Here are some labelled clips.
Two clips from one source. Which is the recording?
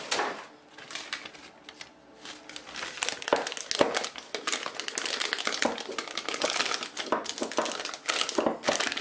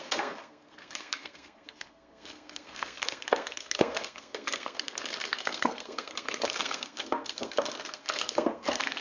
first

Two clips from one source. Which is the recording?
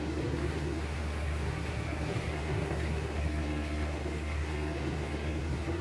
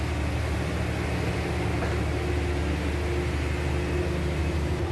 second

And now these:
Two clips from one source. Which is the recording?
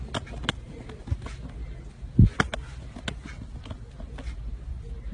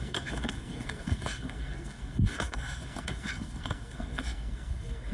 first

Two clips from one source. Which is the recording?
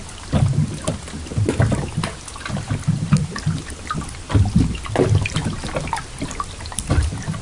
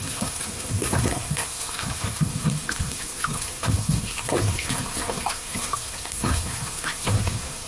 first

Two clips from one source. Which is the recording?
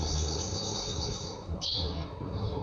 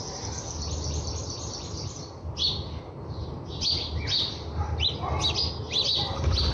second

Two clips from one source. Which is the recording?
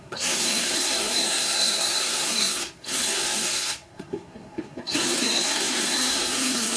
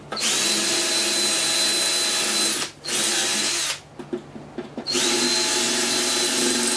second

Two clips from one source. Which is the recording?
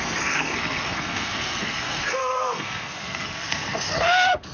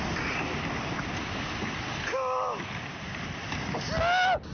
second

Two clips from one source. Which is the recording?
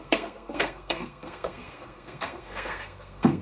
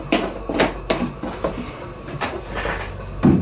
second